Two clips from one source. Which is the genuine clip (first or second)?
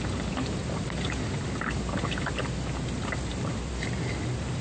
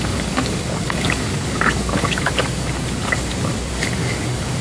first